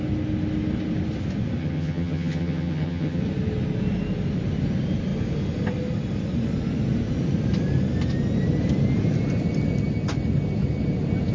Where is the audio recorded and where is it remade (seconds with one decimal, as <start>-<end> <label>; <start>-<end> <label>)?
0.0-1.6 recorded; 1.6-3.2 remade; 3.2-11.3 recorded